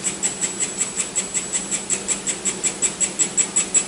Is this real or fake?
real